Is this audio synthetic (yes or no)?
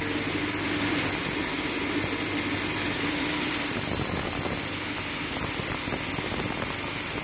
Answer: no